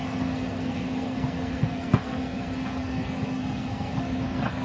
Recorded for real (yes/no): no